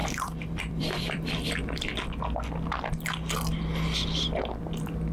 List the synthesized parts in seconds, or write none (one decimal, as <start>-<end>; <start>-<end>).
0.0-1.6